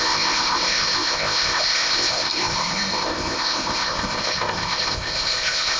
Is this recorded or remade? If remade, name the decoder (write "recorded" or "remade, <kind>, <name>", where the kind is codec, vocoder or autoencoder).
remade, codec, ZipCodec